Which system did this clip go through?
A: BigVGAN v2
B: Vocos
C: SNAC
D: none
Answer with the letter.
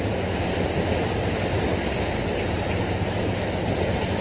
D